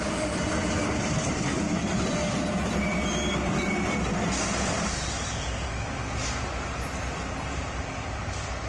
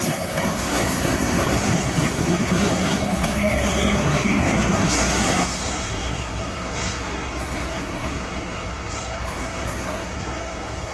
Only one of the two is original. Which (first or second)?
first